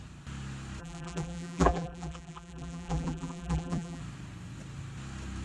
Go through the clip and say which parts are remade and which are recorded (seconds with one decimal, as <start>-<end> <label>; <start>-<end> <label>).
0.0-0.8 recorded; 0.8-4.0 remade; 4.0-5.4 recorded